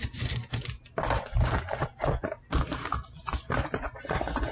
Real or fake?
real